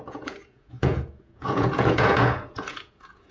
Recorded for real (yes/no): no